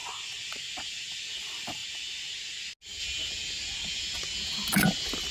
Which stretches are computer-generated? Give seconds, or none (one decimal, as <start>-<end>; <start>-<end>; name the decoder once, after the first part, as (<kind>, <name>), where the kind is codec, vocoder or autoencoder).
none